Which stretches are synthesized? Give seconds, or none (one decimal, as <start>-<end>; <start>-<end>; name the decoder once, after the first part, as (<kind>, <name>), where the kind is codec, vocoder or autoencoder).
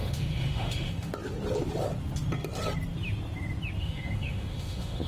0.0-1.1 (autoencoder, DAC-VAE); 3.8-5.1